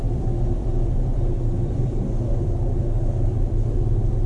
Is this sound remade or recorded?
remade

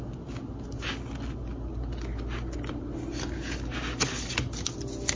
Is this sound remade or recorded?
recorded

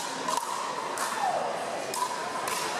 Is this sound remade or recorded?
recorded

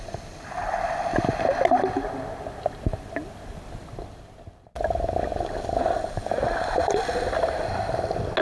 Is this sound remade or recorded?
recorded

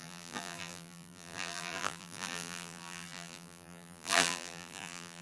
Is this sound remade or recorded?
remade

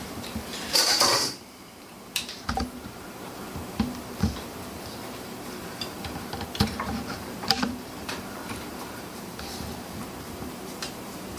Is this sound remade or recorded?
remade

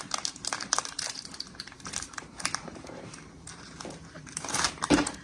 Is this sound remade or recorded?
remade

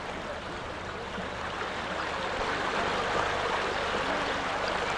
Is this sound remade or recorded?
remade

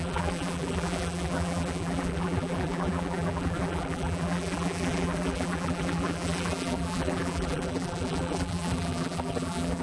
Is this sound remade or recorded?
remade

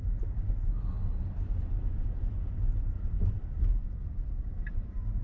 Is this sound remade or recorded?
recorded